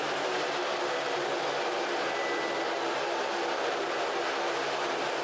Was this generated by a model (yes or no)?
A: no